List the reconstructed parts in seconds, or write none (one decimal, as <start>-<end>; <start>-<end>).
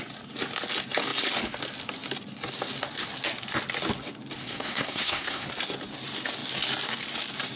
4.4-5.5